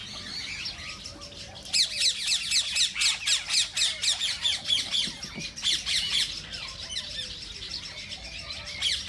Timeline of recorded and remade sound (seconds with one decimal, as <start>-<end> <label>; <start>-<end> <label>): 0.0-9.1 recorded